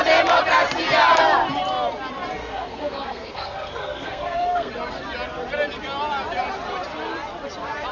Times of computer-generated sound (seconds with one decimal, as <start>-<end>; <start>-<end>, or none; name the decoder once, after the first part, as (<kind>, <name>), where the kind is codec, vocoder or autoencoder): 2.4-4.7 (codec, SNAC)